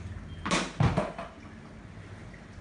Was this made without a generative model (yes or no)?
yes